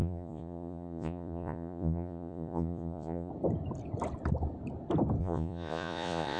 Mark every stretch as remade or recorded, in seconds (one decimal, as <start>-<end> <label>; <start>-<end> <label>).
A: 0.0-3.3 remade; 3.3-5.2 recorded; 5.2-6.4 remade